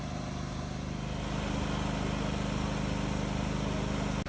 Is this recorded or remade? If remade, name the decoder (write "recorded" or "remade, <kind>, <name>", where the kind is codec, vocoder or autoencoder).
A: recorded